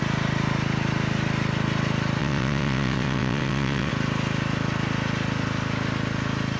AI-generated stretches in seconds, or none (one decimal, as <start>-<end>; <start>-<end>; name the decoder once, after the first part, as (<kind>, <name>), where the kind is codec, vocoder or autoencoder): 2.2-3.9 (vocoder, WaveNeXt)